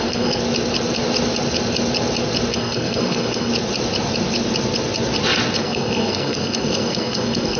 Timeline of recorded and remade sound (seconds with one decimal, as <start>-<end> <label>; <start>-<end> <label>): 0.0-0.4 remade; 0.4-2.5 recorded; 2.5-3.5 remade; 3.5-5.6 recorded; 5.6-7.6 remade